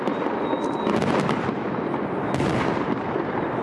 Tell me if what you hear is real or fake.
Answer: real